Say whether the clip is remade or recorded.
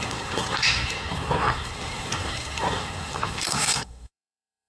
remade